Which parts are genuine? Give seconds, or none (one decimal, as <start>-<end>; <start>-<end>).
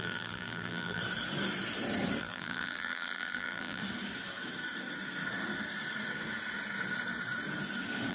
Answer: 1.0-2.2; 3.8-8.1